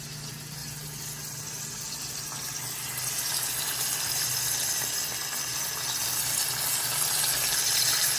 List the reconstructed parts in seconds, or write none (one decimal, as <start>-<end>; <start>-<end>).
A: none